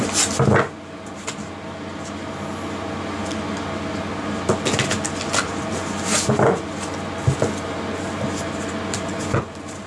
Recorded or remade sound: recorded